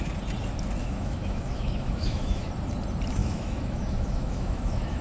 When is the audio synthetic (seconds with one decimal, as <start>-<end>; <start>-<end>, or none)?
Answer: 0.8-2.5; 3.2-5.0